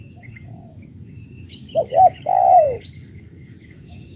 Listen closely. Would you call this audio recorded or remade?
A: remade